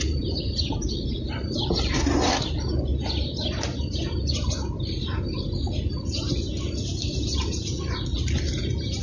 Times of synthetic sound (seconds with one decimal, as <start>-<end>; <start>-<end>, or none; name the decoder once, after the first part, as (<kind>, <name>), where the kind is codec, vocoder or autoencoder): 0.0-2.9 (vocoder, BigVGAN v2); 6.9-9.0